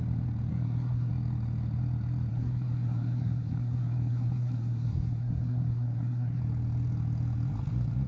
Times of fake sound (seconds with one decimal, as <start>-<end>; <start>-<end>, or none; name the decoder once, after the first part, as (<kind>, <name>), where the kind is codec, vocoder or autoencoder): 0.5-1.1 (codec, SNAC); 2.3-6.4